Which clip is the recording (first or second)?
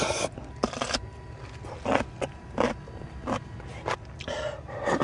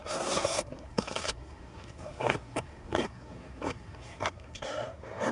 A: first